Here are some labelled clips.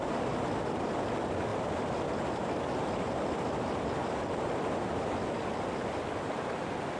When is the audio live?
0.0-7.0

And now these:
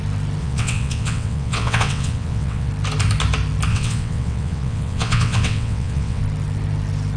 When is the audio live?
0.0-0.4; 2.7-3.7; 6.2-7.2

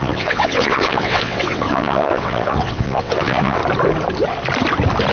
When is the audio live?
3.6-5.1

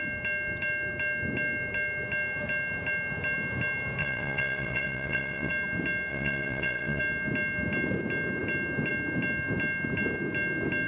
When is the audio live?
0.0-4.0; 5.5-6.1; 7.0-10.9

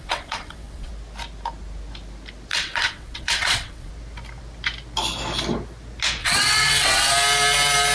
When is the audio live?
0.9-2.5; 3.9-6.2; 7.1-7.9

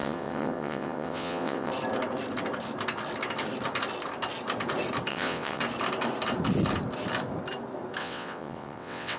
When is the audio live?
1.7-5.1; 5.6-8.0

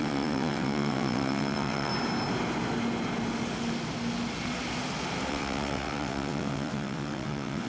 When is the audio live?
1.9-5.3